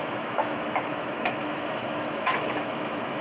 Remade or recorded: remade